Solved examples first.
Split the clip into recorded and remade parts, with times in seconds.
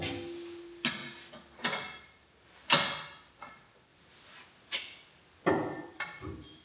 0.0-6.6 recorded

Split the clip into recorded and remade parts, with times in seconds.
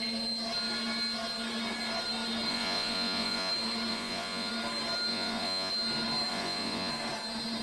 0.0-2.5 recorded; 2.5-3.5 remade; 3.5-3.9 recorded; 3.9-4.5 remade; 4.5-5.1 recorded; 5.1-5.7 remade; 5.7-6.3 recorded; 6.3-6.9 remade; 6.9-7.6 recorded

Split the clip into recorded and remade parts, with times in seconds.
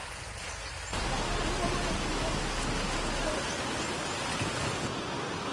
0.0-5.5 recorded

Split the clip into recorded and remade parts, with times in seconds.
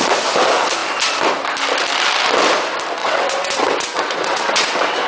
0.0-3.0 recorded; 3.0-5.1 remade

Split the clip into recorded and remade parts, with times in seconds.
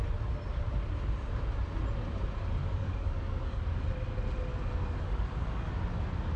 0.0-2.6 recorded; 2.6-3.8 remade; 3.8-4.5 recorded; 4.5-5.7 remade; 5.7-6.4 recorded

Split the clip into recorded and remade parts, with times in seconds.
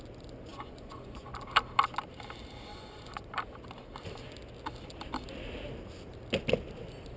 0.0-0.5 recorded; 0.5-1.3 remade; 1.3-2.7 recorded; 2.7-3.3 remade; 3.3-7.2 recorded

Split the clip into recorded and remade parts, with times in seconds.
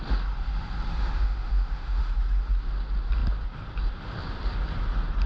0.0-0.9 recorded; 0.9-2.0 remade; 2.0-5.3 recorded